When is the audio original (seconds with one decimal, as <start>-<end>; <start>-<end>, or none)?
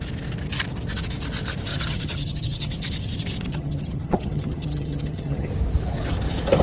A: 0.0-1.7; 2.7-3.5; 5.5-6.6